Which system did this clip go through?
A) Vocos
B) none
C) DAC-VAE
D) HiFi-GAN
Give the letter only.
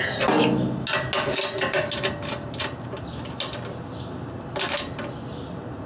B